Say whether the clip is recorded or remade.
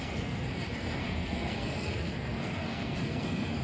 remade